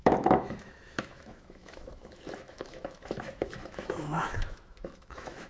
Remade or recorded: remade